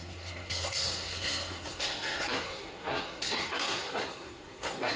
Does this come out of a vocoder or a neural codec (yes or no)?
yes